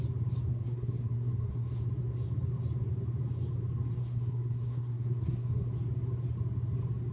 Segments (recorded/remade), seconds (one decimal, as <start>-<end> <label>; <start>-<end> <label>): 0.0-0.5 recorded; 0.5-1.8 remade; 1.8-4.0 recorded; 4.0-5.7 remade; 5.7-7.1 recorded